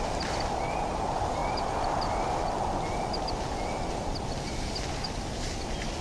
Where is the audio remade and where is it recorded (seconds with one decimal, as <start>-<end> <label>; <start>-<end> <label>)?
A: 0.0-1.4 remade; 1.4-3.9 recorded; 3.9-6.0 remade